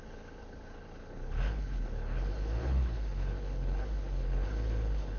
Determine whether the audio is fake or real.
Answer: fake